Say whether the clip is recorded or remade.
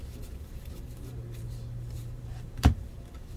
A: remade